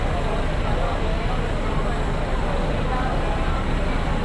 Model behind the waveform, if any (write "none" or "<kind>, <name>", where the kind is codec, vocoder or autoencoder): none